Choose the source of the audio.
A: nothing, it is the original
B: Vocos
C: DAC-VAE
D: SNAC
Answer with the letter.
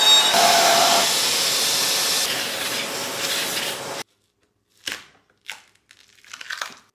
A